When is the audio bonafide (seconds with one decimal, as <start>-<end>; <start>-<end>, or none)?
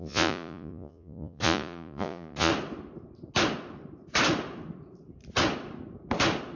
2.5-6.6